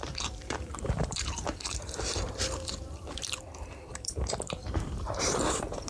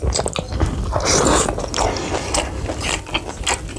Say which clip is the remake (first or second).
first